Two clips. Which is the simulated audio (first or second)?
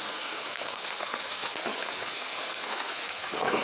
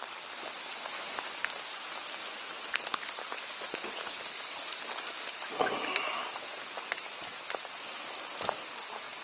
first